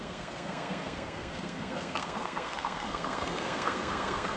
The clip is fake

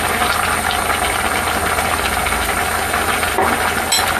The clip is real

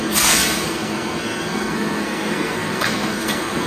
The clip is fake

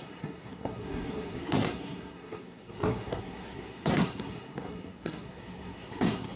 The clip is fake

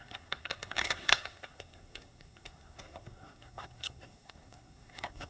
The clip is fake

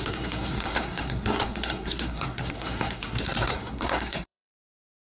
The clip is fake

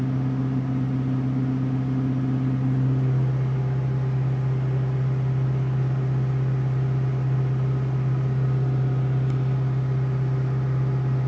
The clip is real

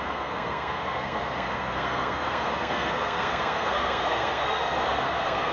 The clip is fake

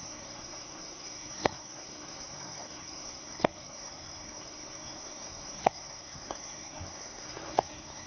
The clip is fake